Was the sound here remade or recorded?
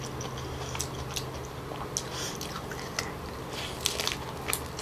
recorded